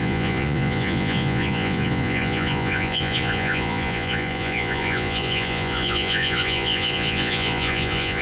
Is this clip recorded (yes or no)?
no